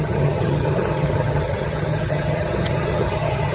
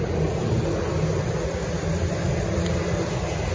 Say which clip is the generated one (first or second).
first